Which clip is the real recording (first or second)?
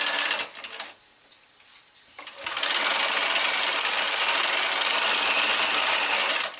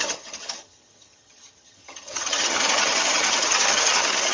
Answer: first